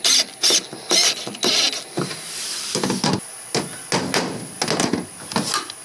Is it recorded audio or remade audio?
recorded